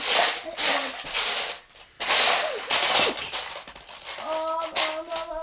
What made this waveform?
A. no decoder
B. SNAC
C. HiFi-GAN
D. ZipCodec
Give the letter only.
A